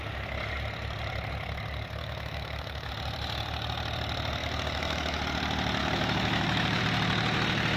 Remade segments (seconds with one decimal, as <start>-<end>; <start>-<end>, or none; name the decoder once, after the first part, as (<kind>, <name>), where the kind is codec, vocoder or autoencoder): 2.0-2.9 (autoencoder, DAC-VAE); 4.4-5.2; 5.8-6.8